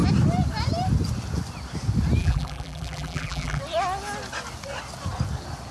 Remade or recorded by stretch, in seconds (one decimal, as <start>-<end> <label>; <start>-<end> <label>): 0.0-2.2 recorded; 2.2-3.6 remade; 3.6-5.7 recorded